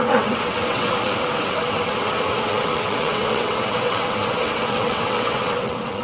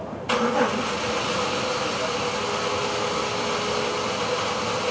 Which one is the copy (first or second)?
first